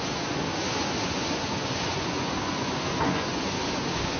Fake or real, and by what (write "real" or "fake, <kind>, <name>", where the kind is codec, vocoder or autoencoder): fake, vocoder, Vocos